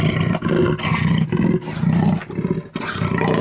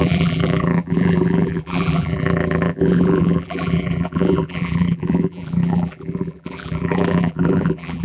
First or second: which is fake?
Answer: second